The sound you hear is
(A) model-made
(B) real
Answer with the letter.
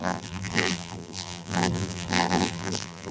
A